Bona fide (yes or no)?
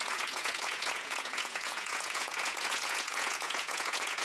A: no